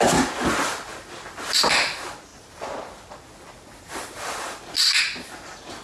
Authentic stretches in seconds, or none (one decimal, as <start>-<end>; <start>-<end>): 0.0-5.8